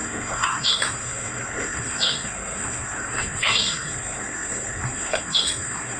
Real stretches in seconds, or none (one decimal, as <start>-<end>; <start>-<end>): none